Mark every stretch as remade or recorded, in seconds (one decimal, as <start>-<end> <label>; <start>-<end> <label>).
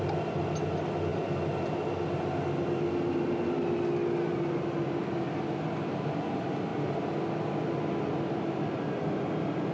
0.0-9.7 recorded